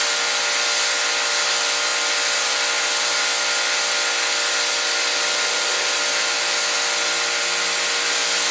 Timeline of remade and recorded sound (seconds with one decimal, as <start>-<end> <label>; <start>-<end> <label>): 0.0-8.5 recorded